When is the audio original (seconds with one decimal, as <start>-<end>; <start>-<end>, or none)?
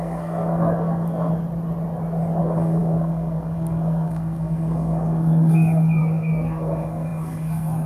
1.3-2.4